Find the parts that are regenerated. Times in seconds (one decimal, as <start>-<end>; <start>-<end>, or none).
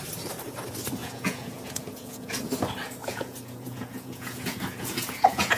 1.0-2.4; 3.0-5.6